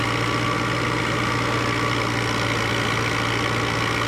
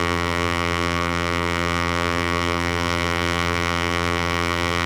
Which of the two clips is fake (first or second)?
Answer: second